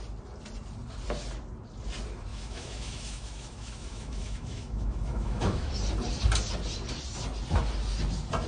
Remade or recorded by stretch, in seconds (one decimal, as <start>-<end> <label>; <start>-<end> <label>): 0.0-2.3 recorded; 2.3-5.7 remade; 5.7-8.5 recorded